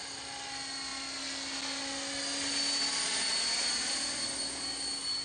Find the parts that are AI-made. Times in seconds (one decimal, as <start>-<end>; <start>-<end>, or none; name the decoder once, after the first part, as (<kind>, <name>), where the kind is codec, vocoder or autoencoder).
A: none